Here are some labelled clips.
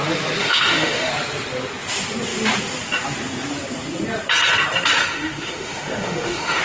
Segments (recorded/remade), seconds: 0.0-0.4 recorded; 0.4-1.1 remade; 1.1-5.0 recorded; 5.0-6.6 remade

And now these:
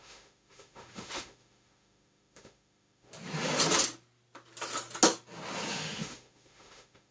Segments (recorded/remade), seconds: 0.0-3.1 remade; 3.1-5.7 recorded; 5.7-7.1 remade